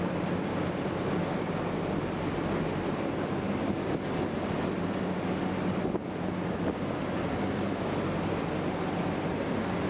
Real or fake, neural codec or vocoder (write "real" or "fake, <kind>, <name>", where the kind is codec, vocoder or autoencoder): real